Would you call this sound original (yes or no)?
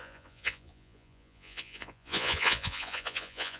no